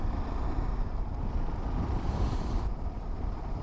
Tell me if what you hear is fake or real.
fake